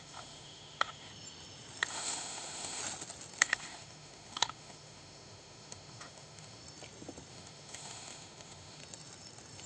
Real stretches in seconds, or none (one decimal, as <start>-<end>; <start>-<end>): 1.1-1.9; 2.8-3.4; 6.6-7.3; 8.8-9.7